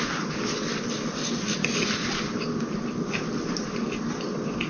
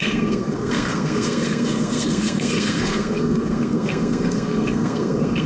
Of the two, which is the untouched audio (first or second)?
first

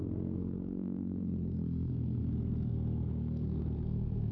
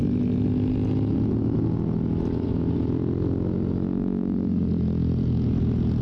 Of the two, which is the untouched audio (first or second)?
second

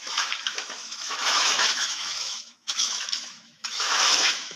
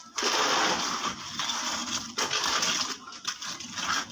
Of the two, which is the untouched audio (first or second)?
second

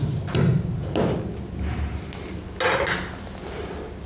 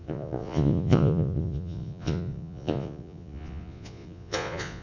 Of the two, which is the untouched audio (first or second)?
first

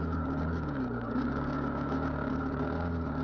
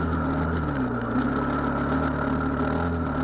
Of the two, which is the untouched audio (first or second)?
second